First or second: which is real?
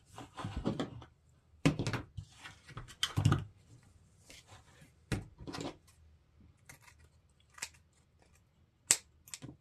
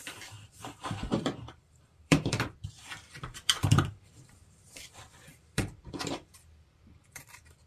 first